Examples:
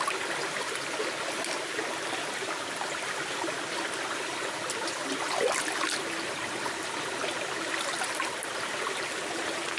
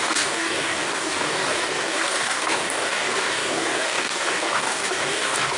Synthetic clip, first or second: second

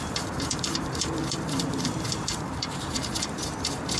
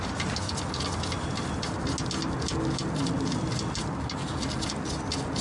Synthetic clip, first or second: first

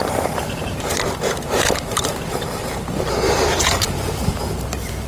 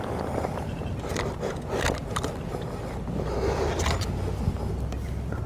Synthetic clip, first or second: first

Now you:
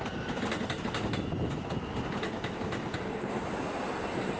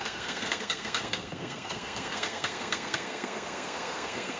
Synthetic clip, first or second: second